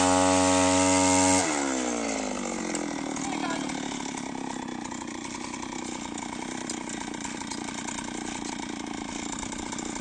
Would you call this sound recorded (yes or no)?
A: yes